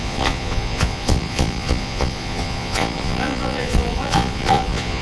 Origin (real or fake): fake